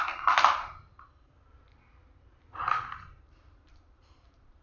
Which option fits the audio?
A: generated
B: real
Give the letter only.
A